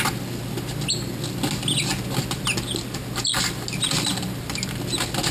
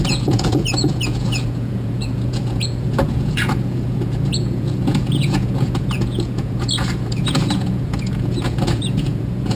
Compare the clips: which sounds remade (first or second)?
second